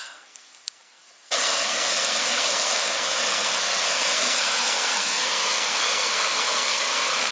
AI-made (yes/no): yes